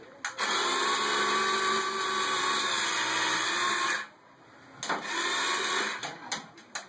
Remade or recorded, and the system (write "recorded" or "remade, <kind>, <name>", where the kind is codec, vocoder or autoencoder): recorded